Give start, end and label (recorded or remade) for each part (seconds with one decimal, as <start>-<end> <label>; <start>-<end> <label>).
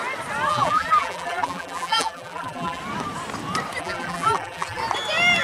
0.0-0.5 recorded; 0.5-2.8 remade; 2.8-3.8 recorded; 3.8-4.8 remade; 4.8-5.4 recorded